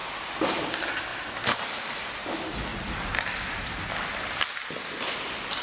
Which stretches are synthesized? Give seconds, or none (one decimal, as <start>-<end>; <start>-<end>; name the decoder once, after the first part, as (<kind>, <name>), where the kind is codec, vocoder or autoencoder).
none